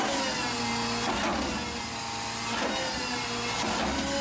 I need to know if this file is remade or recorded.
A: recorded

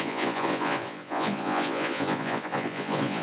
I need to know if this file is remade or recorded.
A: remade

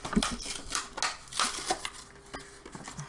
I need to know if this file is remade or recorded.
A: recorded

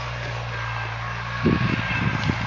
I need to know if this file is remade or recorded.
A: recorded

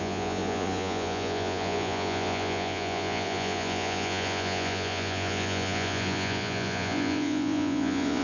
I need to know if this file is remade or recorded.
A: remade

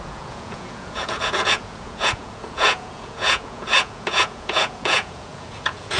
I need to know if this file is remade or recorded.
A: remade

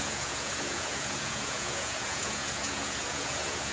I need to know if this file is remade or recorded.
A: remade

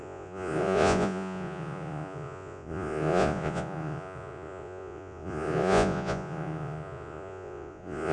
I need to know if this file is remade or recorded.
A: remade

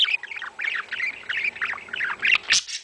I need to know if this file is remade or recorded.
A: recorded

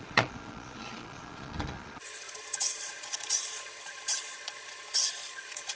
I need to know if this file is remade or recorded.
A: remade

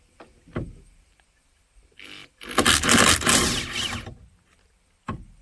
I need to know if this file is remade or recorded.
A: recorded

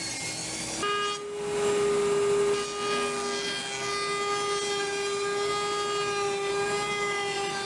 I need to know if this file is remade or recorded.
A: recorded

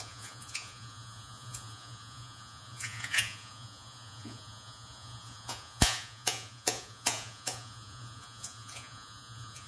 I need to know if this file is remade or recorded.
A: remade